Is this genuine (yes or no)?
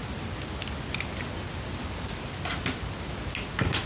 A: yes